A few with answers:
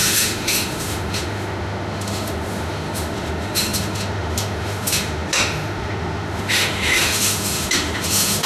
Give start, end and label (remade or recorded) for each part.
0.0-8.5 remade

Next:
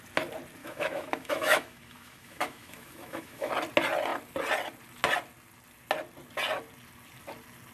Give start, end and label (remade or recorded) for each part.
0.0-0.6 recorded; 0.6-3.5 remade; 3.5-7.7 recorded

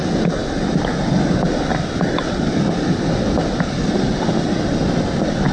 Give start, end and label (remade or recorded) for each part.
0.0-5.5 recorded

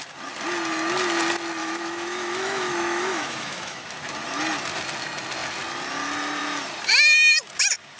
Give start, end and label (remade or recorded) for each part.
0.0-1.6 recorded; 1.6-3.8 remade; 3.8-8.0 recorded

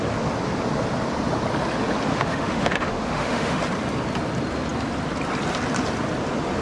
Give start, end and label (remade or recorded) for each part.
0.0-2.1 recorded; 2.1-3.6 remade; 3.6-6.6 recorded